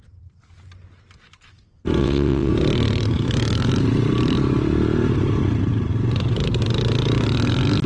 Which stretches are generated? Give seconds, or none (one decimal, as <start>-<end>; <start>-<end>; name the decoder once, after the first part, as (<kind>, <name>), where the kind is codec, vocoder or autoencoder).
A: 2.0-2.5 (vocoder, WaveNeXt)